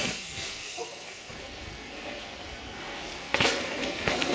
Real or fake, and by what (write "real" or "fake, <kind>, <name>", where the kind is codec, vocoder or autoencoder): fake, codec, SNAC